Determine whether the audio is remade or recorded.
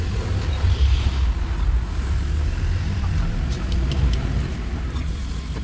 remade